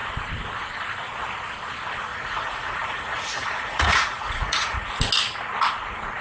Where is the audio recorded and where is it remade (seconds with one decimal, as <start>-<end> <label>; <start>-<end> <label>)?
0.0-2.1 recorded; 2.1-4.9 remade; 4.9-6.2 recorded